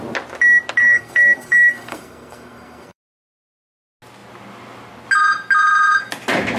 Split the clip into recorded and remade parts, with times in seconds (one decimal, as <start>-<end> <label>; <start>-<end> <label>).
0.0-0.8 recorded; 0.8-3.7 remade; 3.7-6.6 recorded